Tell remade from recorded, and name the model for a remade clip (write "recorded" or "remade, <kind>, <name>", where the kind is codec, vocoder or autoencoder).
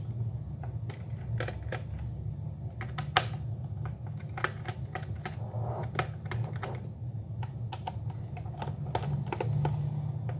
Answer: recorded